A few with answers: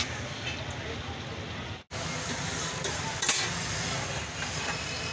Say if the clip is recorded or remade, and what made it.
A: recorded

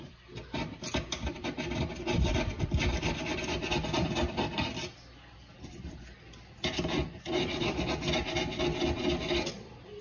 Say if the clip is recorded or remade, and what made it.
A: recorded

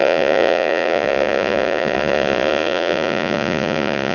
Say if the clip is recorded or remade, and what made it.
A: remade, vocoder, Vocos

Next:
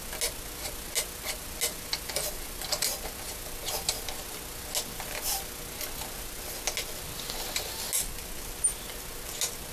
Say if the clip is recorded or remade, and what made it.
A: recorded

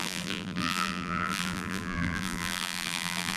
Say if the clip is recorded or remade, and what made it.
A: remade, vocoder, BigVGAN v2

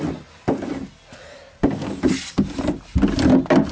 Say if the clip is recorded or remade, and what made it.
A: recorded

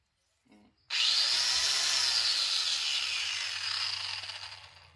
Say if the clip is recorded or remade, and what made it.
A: recorded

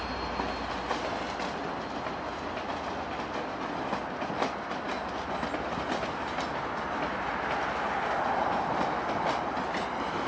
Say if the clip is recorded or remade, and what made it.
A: recorded